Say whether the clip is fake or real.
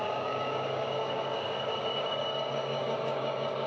fake